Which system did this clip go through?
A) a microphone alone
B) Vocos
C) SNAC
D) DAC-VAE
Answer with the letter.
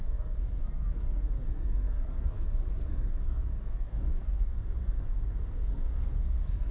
C